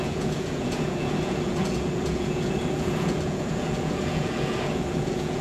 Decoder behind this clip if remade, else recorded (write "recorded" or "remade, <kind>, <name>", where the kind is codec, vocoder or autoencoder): remade, vocoder, Vocos